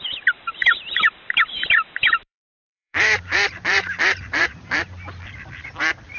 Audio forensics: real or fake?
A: fake